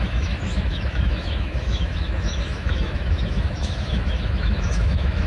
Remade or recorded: remade